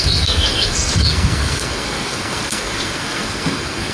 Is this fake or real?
fake